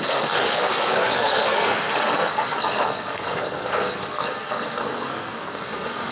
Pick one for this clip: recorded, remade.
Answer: remade